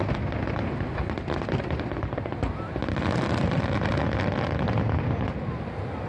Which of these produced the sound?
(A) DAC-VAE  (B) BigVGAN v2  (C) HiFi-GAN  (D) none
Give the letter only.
D